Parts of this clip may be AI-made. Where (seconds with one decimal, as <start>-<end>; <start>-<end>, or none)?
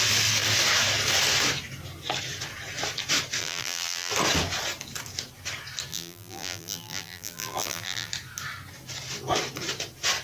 3.4-4.1; 5.9-8.1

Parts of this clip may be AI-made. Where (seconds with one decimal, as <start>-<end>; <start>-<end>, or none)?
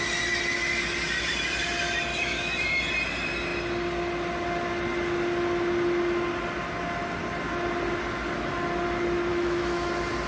2.1-2.8; 9.3-9.9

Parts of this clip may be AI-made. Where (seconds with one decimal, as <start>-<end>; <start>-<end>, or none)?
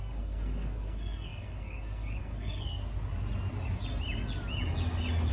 0.0-2.8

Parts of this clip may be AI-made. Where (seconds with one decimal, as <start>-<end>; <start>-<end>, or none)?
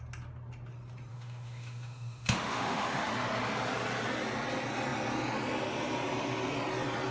1.1-3.1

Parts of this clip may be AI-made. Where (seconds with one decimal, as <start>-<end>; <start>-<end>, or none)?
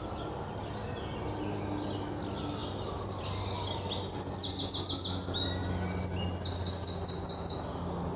none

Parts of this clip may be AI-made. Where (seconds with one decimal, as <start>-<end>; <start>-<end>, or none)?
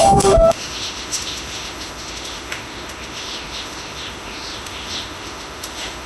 0.0-6.1